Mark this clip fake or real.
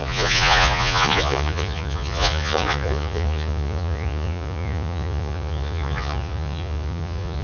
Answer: fake